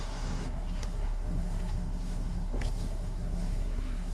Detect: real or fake fake